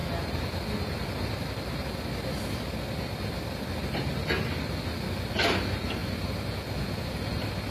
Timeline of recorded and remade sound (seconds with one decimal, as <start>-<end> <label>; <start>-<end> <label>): 0.0-7.7 recorded